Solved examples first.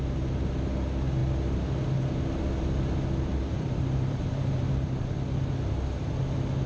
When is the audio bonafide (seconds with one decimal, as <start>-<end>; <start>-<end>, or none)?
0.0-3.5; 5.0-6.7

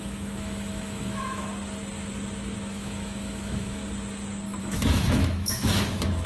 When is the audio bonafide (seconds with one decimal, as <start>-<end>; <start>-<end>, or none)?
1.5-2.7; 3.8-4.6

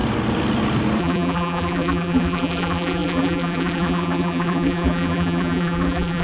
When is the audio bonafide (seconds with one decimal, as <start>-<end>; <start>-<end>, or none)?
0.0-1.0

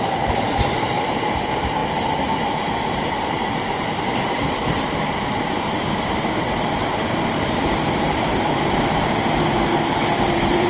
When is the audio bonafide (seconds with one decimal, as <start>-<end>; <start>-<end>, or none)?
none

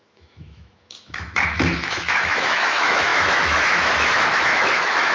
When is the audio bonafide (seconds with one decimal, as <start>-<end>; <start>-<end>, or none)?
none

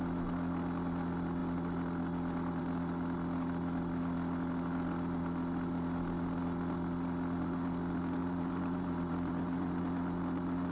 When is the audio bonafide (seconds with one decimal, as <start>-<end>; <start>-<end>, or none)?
0.0-8.2; 9.8-10.7

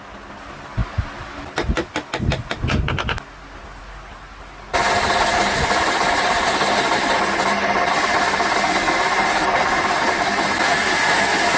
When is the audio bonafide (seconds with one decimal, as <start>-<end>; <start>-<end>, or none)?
0.0-11.6

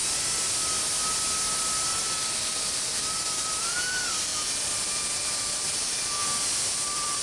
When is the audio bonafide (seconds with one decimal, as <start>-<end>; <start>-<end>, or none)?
0.0-2.0; 6.2-6.7